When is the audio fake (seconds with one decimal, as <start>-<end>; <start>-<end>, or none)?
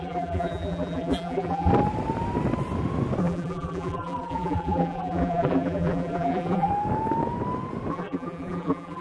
0.0-1.7; 3.2-6.7; 7.9-9.0